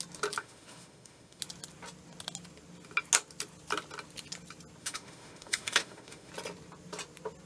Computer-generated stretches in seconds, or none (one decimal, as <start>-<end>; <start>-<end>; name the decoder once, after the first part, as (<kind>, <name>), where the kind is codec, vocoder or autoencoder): 0.4-1.4 (autoencoder, DAC-VAE); 4.8-6.3